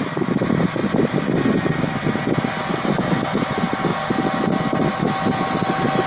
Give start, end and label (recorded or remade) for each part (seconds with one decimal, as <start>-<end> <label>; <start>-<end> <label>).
0.0-6.1 recorded